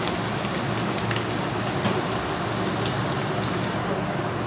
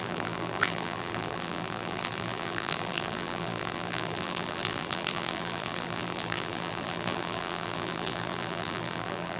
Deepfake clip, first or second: second